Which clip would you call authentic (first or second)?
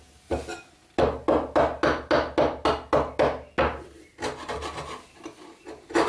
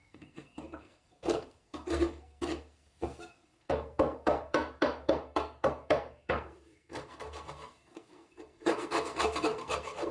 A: first